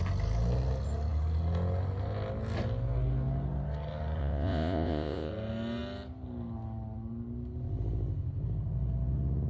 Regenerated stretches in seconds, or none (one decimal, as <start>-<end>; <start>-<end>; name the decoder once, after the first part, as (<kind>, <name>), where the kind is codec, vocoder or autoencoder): 4.2-5.3 (vocoder, Vocos)